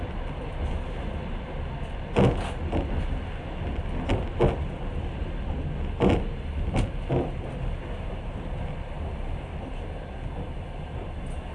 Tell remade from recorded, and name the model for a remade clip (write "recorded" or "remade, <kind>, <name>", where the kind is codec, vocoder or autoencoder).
recorded